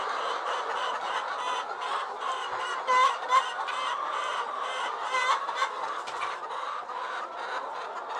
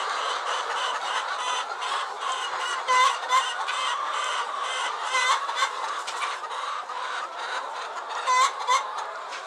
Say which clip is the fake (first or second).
second